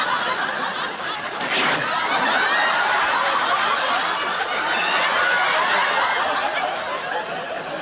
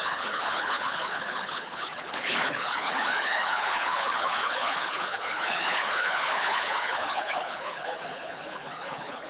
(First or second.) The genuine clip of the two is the first